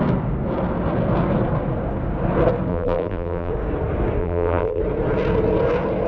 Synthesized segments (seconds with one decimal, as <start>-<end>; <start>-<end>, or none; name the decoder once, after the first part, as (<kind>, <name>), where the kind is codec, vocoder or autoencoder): 2.7-3.5 (vocoder, BigVGAN v2); 4.2-4.8